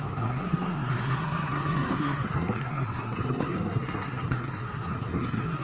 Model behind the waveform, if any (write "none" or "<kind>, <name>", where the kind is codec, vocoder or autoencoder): codec, SNAC